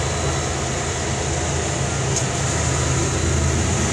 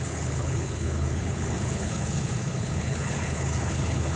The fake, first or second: second